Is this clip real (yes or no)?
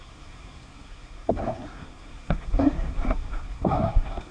no